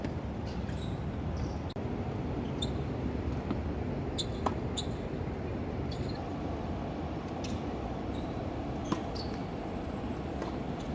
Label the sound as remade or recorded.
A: remade